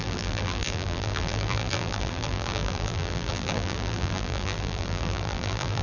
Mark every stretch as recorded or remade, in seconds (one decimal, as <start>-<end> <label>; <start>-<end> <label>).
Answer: 0.0-5.8 remade